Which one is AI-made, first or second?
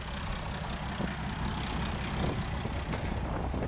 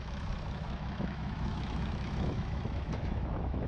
second